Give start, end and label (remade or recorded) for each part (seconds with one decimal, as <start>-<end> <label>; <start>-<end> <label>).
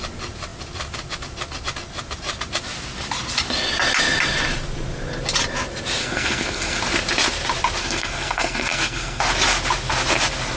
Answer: 0.0-6.0 recorded; 6.0-6.8 remade; 6.8-7.8 recorded; 7.8-9.2 remade; 9.2-10.6 recorded